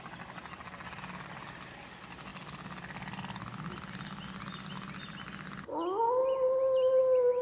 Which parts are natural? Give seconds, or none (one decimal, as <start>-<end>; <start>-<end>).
0.0-7.4

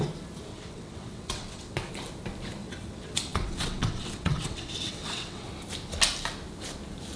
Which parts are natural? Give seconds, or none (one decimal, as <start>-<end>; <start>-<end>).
0.0-0.5; 1.9-2.6; 5.5-7.2

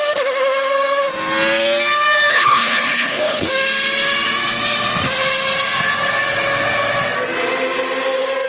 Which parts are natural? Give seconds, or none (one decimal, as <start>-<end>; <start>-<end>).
0.0-2.3; 3.5-8.5

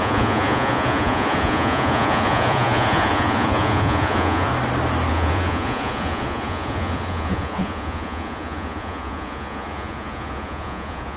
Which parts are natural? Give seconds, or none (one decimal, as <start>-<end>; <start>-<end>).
4.5-5.1

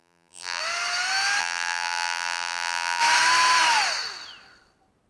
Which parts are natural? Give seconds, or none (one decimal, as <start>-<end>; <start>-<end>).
0.6-1.4; 3.0-5.1

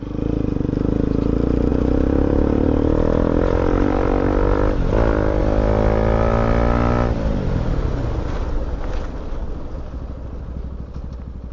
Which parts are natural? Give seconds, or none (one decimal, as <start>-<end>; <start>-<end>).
0.0-1.7; 5.4-11.5